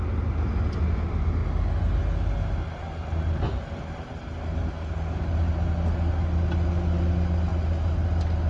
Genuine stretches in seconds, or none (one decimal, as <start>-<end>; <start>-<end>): 0.0-8.5